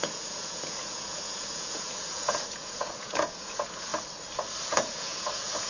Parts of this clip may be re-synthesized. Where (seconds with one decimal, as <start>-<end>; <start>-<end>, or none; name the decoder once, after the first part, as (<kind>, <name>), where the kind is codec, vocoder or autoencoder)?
0.0-3.9 (vocoder, Vocos); 4.6-5.7